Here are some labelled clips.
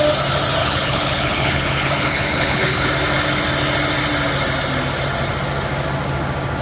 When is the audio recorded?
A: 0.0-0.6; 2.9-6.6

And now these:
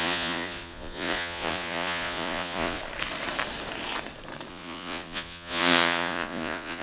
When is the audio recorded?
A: 2.8-4.5

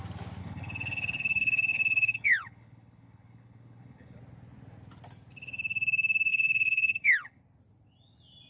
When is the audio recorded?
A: 0.0-0.4; 4.2-6.3; 7.4-8.5